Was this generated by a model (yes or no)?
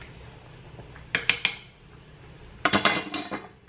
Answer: no